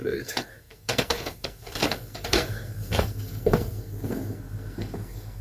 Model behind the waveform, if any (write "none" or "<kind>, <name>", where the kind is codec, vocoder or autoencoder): codec, SNAC